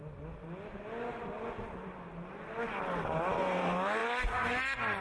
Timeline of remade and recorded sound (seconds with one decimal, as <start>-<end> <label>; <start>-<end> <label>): 0.0-5.0 recorded